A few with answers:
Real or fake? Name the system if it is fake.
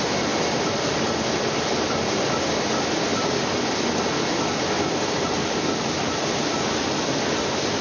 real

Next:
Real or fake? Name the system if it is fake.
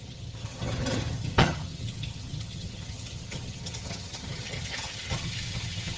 fake, vocoder, HiFi-GAN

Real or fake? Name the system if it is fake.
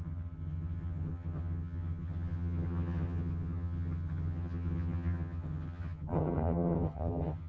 fake, vocoder, HiFi-GAN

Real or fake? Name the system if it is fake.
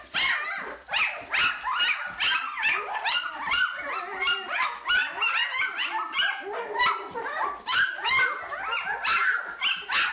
real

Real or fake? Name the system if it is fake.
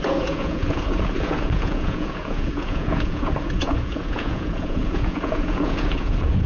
fake, vocoder, Vocos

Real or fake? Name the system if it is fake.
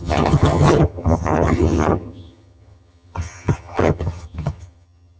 fake, vocoder, HiFi-GAN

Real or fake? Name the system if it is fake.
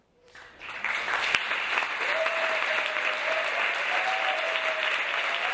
fake, vocoder, BigVGAN v2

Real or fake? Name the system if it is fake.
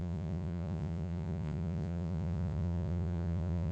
fake, vocoder, Vocos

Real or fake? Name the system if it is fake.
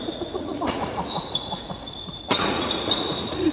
fake, vocoder, Vocos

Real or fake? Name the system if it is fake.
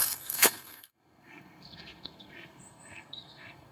fake, codec, SNAC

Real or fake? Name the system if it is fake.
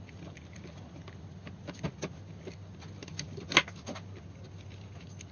real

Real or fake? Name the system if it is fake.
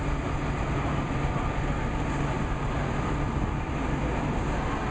real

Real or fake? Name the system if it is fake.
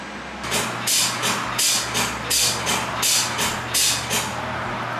real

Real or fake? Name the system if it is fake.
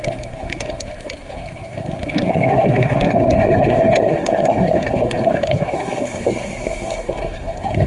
fake, codec, SNAC